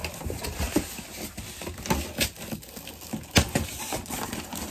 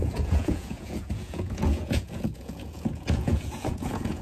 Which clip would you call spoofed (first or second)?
second